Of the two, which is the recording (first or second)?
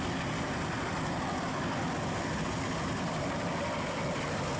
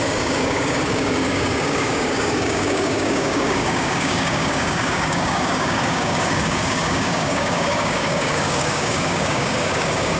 first